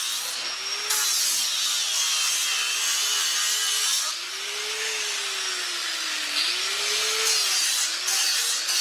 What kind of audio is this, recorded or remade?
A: recorded